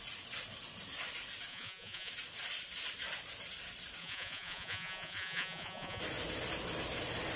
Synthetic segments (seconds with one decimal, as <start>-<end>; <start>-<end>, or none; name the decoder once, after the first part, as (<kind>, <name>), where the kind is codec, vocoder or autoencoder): 1.5-2.1 (vocoder, Vocos); 4.0-6.0

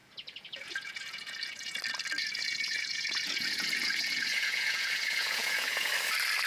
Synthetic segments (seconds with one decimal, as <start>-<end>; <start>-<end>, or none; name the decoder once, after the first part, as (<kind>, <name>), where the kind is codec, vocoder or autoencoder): 0.0-1.8 (vocoder, Vocos); 2.2-5.9

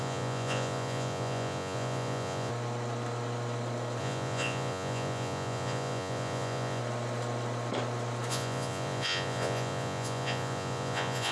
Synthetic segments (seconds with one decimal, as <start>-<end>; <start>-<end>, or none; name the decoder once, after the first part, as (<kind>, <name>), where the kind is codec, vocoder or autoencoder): 0.0-2.5 (vocoder, Vocos); 4.0-6.8; 8.3-11.3

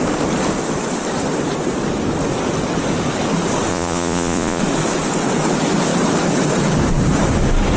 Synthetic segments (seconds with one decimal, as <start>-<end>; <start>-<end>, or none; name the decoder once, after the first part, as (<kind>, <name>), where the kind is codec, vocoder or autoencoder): 3.7-4.6 (vocoder, Vocos)